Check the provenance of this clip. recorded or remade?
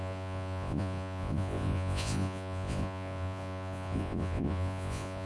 remade